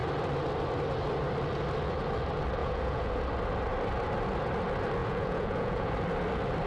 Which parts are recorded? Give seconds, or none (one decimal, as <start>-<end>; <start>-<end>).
0.0-2.6; 3.1-5.0; 5.9-6.7